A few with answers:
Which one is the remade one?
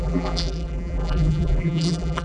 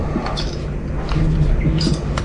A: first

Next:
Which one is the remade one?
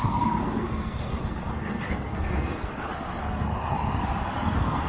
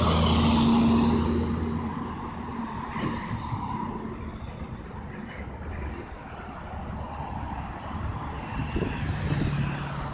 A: first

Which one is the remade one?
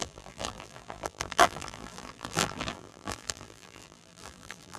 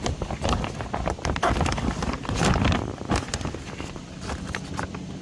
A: first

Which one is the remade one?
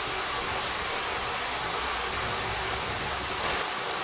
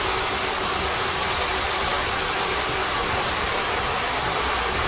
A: second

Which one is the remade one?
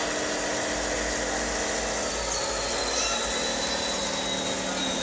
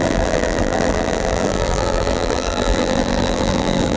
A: second